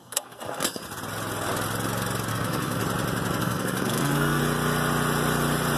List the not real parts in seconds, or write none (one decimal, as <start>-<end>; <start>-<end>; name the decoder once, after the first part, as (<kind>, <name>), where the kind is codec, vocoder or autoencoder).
0.0-0.8 (codec, SNAC); 2.3-2.8; 3.4-4.4